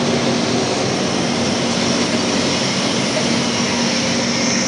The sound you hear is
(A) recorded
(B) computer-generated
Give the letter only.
A